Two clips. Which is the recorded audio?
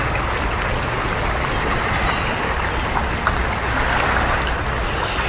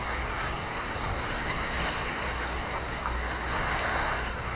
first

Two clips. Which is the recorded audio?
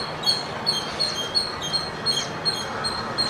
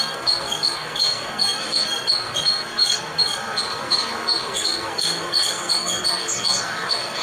first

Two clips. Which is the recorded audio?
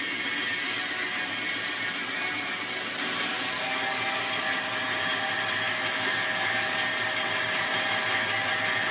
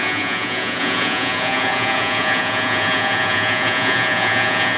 first